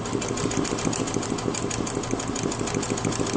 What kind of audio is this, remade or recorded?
recorded